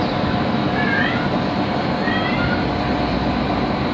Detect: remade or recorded recorded